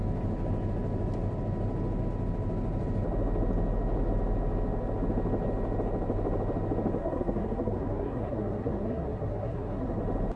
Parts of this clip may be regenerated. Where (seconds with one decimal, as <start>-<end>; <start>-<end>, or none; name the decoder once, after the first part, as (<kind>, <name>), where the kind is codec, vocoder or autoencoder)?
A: 7.0-10.0 (codec, SNAC)